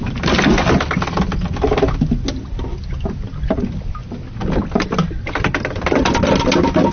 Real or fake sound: real